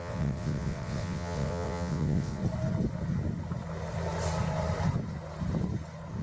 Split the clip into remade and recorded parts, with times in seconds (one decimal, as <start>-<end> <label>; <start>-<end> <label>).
0.0-2.4 remade; 2.4-6.2 recorded